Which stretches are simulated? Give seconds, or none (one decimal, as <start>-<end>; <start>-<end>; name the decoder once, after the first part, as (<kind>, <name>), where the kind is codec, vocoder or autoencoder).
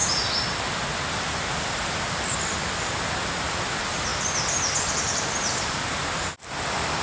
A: 1.1-7.0 (vocoder, BigVGAN v2)